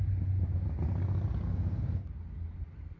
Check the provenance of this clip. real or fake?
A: real